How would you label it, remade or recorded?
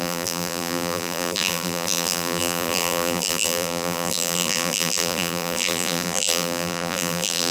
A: remade